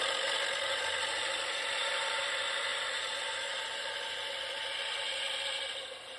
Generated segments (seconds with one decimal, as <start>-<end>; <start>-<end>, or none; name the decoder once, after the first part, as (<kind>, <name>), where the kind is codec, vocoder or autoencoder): none